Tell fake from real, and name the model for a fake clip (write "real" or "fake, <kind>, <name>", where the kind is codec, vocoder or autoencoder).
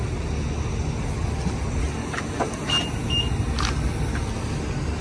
real